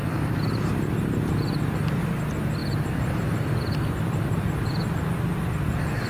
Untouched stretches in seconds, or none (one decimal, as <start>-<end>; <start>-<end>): 0.9-2.6; 4.9-6.1